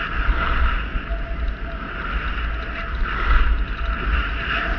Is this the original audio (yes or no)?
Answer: yes